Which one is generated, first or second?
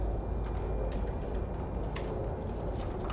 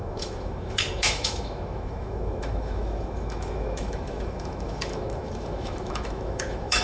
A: second